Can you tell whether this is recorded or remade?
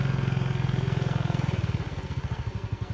remade